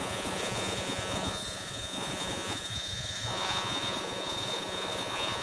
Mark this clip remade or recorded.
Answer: remade